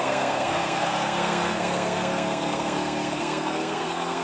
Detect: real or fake fake